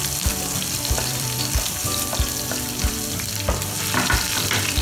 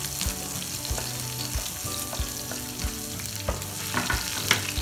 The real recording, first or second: second